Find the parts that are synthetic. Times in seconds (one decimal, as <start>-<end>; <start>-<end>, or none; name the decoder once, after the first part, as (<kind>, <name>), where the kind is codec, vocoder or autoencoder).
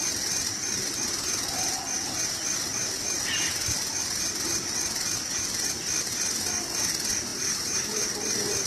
7.3-7.9 (vocoder, BigVGAN v2)